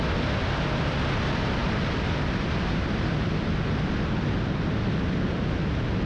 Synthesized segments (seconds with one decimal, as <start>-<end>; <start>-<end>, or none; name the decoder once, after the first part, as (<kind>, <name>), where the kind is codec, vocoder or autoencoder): none